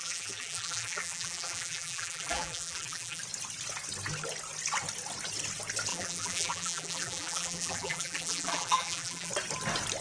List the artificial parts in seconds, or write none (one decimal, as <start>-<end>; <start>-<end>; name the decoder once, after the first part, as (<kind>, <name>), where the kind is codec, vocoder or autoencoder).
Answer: 0.0-3.2 (vocoder, BigVGAN v2); 5.9-9.3

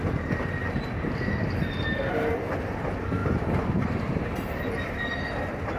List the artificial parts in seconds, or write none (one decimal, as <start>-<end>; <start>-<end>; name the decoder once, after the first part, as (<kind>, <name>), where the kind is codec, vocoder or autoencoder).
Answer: 0.6-1.6 (vocoder, BigVGAN v2); 3.2-5.0

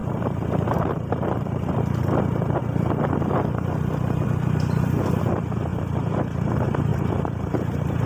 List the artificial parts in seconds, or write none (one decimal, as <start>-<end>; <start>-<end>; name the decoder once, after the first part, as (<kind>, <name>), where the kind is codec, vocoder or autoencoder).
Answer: 0.0-2.6 (vocoder, BigVGAN v2); 5.7-6.5; 6.9-8.1

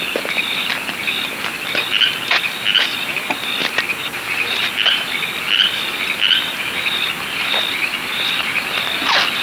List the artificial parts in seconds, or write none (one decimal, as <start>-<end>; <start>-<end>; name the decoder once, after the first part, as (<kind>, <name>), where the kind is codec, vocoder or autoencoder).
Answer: none

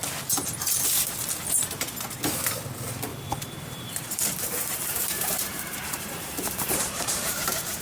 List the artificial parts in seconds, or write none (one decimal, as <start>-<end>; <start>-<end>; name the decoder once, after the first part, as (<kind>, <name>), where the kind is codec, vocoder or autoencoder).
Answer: 3.1-7.8 (vocoder, BigVGAN v2)

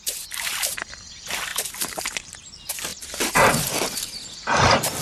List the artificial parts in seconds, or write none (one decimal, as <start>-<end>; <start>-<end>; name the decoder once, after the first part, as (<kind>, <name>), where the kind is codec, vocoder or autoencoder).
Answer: 0.0-5.0 (vocoder, BigVGAN v2)

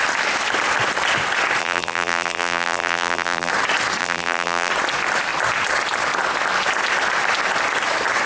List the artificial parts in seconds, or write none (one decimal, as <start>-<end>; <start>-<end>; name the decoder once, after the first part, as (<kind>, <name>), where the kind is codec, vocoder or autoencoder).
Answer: 1.6-3.5 (vocoder, BigVGAN v2); 4.0-4.7

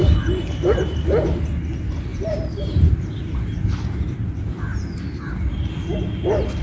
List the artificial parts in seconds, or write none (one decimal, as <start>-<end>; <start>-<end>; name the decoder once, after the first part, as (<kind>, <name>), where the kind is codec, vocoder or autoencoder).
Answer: 2.1-4.2 (vocoder, BigVGAN v2); 4.7-5.3